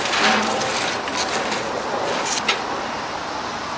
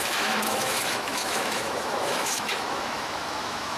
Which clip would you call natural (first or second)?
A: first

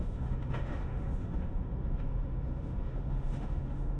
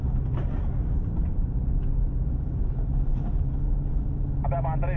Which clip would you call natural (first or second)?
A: second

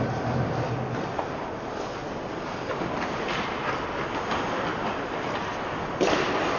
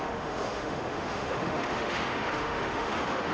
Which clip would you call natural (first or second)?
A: first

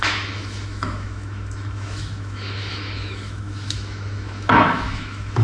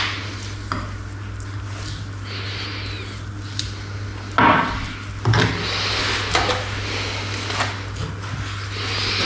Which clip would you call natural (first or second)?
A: second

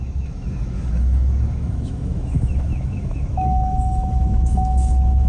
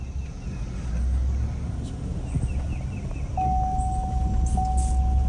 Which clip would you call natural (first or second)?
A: second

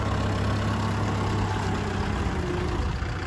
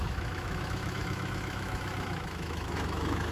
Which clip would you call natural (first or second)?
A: first